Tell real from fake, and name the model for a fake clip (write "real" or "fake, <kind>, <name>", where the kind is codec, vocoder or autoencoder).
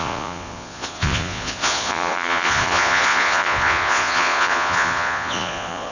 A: fake, vocoder, Vocos